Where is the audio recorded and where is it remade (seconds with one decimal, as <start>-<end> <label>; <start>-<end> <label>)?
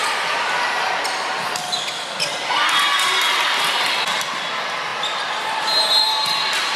0.0-6.8 recorded